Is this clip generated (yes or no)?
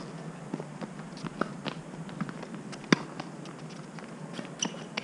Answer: no